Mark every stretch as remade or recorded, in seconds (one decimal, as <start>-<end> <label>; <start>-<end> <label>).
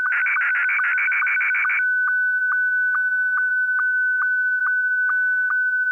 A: 0.0-5.9 recorded